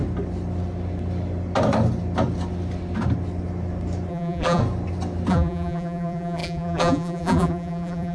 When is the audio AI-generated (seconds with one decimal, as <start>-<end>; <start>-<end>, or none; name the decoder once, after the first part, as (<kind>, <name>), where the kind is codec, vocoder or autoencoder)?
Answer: 4.1-4.6 (vocoder, BigVGAN v2); 5.3-8.1